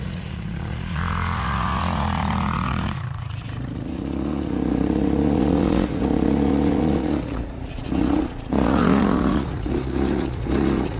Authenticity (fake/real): fake